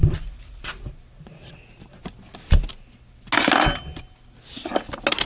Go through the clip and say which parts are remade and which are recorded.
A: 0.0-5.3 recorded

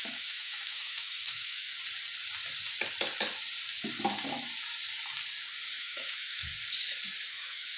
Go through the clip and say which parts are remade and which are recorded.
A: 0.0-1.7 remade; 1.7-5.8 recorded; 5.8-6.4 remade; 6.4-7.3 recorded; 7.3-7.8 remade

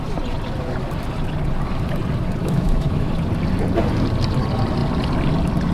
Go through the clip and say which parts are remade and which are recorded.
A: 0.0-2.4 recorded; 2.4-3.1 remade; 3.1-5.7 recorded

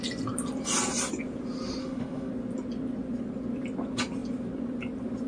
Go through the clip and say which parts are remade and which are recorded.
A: 0.0-1.8 recorded; 1.8-2.3 remade; 2.3-5.3 recorded